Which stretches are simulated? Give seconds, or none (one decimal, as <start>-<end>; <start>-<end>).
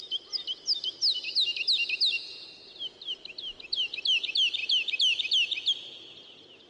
none